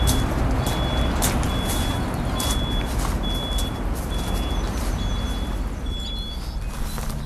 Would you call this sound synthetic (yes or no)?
no